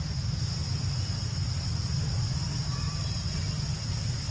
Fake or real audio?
real